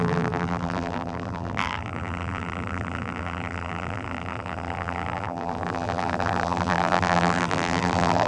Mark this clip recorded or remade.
remade